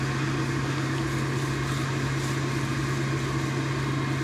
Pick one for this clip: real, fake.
real